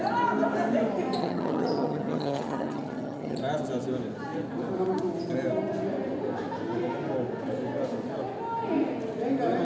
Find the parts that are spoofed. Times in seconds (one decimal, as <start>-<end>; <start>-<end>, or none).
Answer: 1.2-3.4

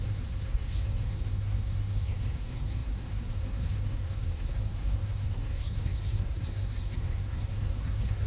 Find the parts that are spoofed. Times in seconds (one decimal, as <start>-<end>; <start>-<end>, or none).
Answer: 0.0-8.3